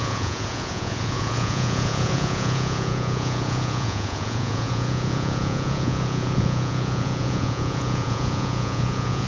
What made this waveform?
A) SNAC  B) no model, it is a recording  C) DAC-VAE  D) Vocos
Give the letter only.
D